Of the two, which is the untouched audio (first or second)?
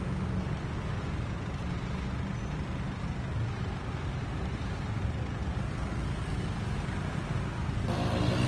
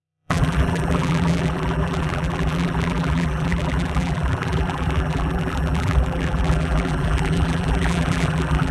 first